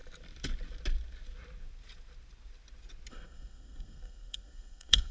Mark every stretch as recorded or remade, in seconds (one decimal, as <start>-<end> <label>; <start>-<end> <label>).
0.0-3.1 recorded; 3.1-5.1 remade